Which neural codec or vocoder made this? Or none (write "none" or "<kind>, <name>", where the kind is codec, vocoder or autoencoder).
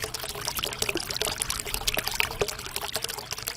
none